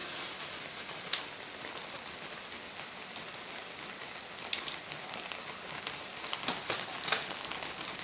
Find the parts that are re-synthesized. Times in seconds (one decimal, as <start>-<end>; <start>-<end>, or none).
none